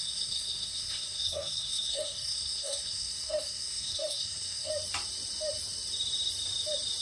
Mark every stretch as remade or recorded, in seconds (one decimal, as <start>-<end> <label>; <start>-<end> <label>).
0.0-4.7 remade; 4.7-7.0 recorded